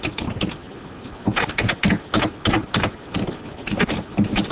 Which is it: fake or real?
real